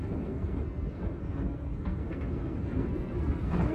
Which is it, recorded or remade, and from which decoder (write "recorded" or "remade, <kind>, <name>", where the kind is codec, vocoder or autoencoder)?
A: remade, codec, SNAC